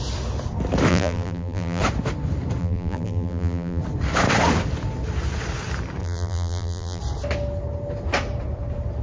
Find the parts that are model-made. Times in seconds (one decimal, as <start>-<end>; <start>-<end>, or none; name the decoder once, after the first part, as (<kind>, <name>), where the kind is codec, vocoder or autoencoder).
0.9-1.8 (vocoder, BigVGAN v2); 2.6-3.8; 6.0-7.0